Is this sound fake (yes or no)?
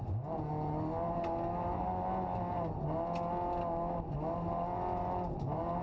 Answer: no